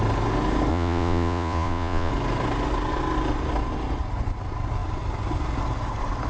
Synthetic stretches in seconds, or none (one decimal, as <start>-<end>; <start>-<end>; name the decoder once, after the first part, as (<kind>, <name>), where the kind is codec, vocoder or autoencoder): 0.7-2.1 (vocoder, Vocos)

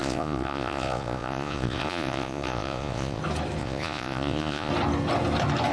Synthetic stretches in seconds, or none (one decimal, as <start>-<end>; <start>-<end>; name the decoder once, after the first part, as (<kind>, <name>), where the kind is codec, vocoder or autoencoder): 0.0-3.2 (vocoder, Vocos); 3.6-4.7

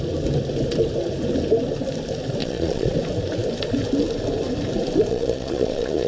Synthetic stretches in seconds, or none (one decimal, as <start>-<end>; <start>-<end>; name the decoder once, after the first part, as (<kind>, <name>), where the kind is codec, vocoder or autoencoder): 2.4-2.9 (vocoder, Vocos); 5.1-6.1

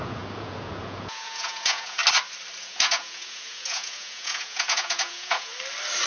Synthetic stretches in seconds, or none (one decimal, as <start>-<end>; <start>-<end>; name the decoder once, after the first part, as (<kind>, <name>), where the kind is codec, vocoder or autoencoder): 0.0-2.0 (vocoder, Vocos); 2.6-5.5